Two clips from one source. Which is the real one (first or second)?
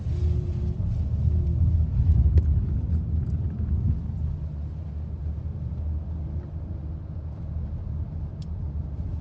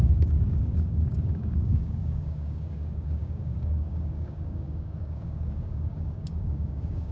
first